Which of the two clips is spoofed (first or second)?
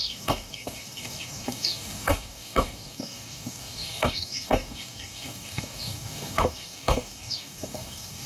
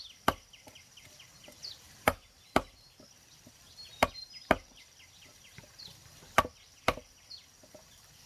first